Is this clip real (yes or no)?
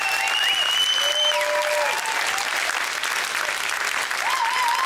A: yes